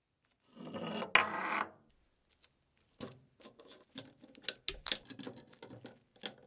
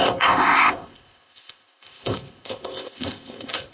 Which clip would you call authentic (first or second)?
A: first